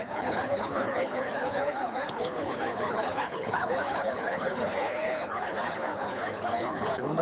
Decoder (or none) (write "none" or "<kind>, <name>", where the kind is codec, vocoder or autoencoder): codec, HILCodec